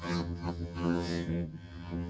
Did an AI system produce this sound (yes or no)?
yes